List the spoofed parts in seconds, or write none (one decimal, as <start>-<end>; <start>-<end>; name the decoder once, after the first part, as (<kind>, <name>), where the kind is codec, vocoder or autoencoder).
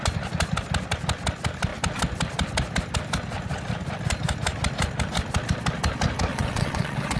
6.3-7.2 (vocoder, WaveNeXt)